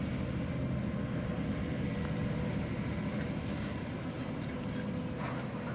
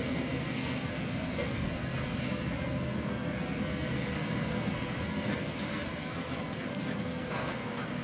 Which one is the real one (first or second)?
first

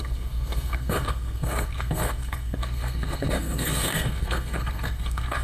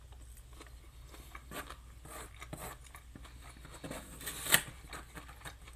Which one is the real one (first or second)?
second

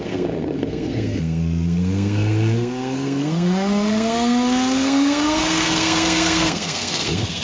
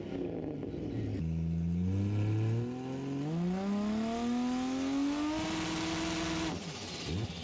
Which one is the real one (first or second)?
second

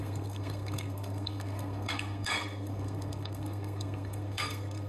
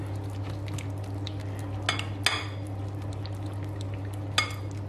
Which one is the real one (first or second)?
second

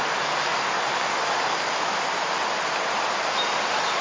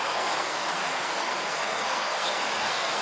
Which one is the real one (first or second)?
first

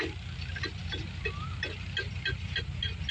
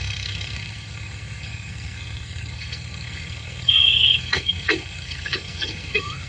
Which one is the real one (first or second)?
first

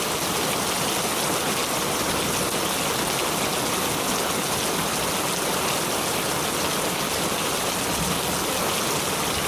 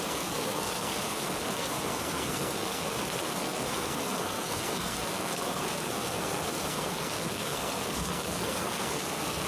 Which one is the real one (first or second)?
first